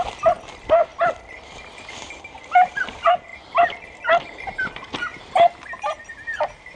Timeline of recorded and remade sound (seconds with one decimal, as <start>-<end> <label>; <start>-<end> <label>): 0.0-0.9 recorded; 0.9-2.0 remade; 2.0-6.8 recorded